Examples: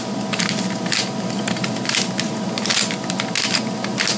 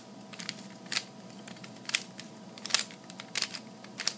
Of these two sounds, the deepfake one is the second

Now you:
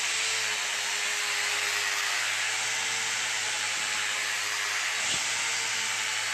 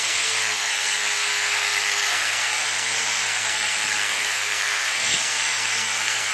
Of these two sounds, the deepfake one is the second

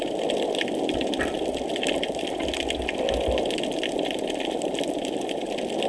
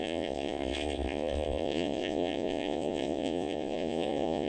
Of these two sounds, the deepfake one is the second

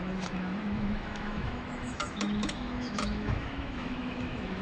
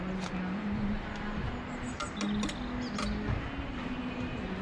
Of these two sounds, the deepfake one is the first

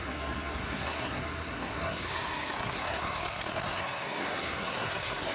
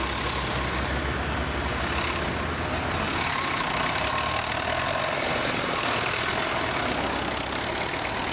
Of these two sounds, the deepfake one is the first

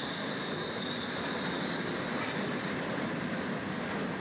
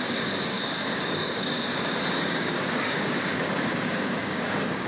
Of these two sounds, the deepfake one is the second